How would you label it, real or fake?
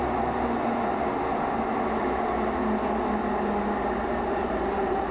real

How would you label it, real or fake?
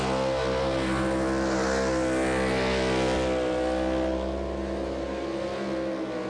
real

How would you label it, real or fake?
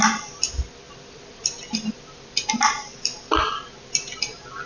real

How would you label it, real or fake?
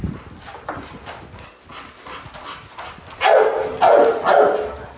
real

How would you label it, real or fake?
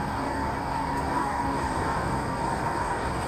fake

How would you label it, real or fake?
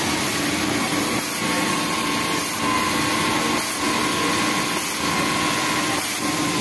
real